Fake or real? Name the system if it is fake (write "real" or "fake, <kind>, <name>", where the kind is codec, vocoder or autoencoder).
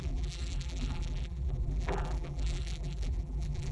fake, vocoder, BigVGAN v2